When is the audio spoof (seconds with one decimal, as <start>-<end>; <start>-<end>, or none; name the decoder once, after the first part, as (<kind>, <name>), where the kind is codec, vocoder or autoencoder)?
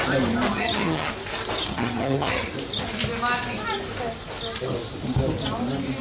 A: 0.5-1.1 (vocoder, HiFi-GAN); 1.7-2.5